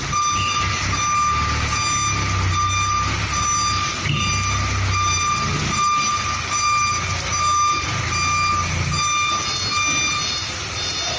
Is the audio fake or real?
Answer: real